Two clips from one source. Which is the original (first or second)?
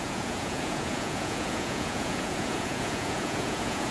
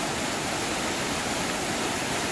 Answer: second